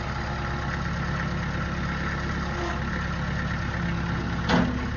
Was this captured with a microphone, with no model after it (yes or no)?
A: yes